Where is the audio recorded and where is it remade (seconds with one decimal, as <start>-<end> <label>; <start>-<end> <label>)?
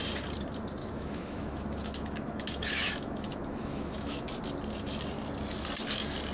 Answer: 0.0-0.8 recorded; 0.8-4.3 remade; 4.3-6.3 recorded